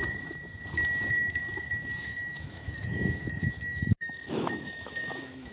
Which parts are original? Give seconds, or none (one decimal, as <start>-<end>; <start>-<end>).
0.0-2.0